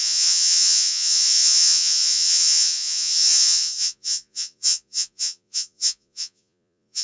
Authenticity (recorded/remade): remade